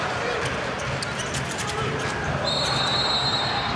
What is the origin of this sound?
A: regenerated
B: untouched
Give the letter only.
A